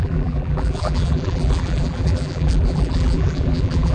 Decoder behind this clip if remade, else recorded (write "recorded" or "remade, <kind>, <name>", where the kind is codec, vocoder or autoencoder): remade, vocoder, BigVGAN v2